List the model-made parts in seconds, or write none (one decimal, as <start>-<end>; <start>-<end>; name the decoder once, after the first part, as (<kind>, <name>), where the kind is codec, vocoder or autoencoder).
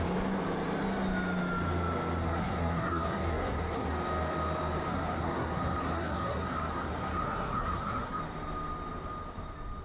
2.2-3.9 (codec, SNAC); 4.9-8.2